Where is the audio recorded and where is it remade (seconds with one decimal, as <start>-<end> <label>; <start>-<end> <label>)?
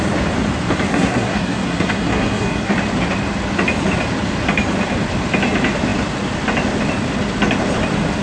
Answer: 0.0-0.9 recorded; 0.9-2.7 remade; 2.7-8.2 recorded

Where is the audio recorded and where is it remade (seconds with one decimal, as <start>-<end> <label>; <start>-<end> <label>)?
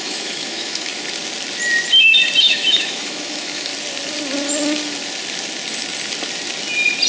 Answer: 0.0-0.9 remade; 0.9-2.4 recorded; 2.4-3.7 remade; 3.7-7.1 recorded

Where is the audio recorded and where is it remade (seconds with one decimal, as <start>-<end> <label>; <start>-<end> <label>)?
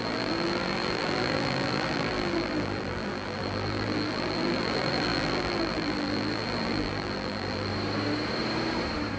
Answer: 0.0-7.7 remade; 7.7-9.2 recorded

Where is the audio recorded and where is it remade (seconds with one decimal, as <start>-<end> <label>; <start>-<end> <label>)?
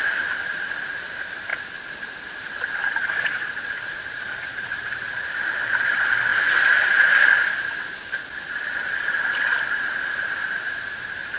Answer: 0.0-1.5 remade; 1.5-2.6 recorded; 2.6-6.3 remade; 6.3-8.8 recorded; 8.8-11.4 remade